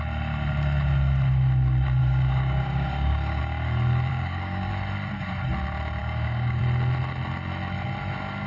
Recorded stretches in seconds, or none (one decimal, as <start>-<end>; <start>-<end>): 0.0-2.0; 3.4-4.1; 4.7-6.0; 6.6-8.5